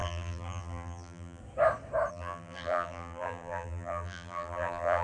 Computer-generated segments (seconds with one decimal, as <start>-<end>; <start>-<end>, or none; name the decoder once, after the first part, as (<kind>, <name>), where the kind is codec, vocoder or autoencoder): 0.0-1.4 (vocoder, BigVGAN v2); 2.1-5.0